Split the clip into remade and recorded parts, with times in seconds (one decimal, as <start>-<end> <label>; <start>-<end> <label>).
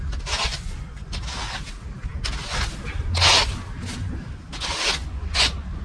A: 0.0-0.5 recorded; 0.5-1.1 remade; 1.1-5.0 recorded; 5.0-5.8 remade